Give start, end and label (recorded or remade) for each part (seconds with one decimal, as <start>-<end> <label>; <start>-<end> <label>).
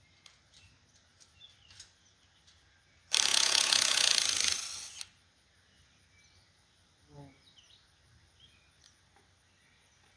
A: 0.0-3.3 recorded; 3.3-4.1 remade; 4.1-10.2 recorded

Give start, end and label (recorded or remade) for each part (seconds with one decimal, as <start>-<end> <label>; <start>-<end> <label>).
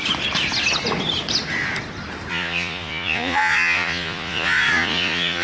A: 0.0-2.3 recorded; 2.3-5.4 remade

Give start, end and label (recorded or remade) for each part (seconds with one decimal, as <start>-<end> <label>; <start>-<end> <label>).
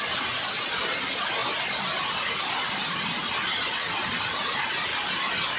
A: 0.0-5.6 recorded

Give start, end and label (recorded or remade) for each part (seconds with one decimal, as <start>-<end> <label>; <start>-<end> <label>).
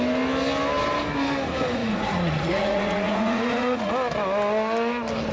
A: 0.0-1.8 recorded; 1.8-3.9 remade; 3.9-5.3 recorded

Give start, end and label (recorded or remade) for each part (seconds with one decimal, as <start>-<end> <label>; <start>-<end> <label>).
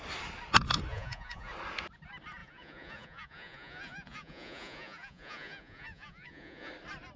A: 0.0-0.9 recorded; 0.9-1.5 remade; 1.5-2.4 recorded; 2.4-6.7 remade; 6.7-7.2 recorded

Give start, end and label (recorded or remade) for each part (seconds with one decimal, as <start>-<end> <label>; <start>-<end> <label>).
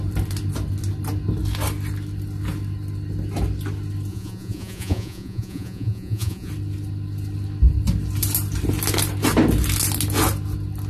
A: 0.0-4.1 recorded; 4.1-6.5 remade; 6.5-10.9 recorded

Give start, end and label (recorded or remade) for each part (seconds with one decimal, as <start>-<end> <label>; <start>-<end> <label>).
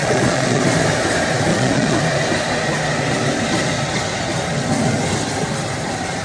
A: 0.0-0.6 remade; 0.6-1.5 recorded; 1.5-2.0 remade; 2.0-6.2 recorded